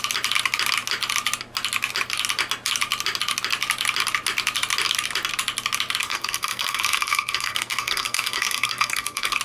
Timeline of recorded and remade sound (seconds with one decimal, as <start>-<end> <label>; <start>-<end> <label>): 0.0-6.0 recorded; 6.0-9.4 remade